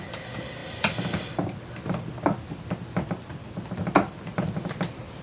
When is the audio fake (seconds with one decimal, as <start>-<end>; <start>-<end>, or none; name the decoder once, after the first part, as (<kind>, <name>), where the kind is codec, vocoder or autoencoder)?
none